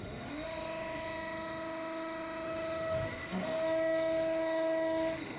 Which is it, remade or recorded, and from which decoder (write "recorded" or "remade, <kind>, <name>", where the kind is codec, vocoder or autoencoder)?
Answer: remade, autoencoder, DAC-VAE